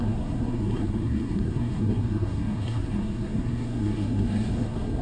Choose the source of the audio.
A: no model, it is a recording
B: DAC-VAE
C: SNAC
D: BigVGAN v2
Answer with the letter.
C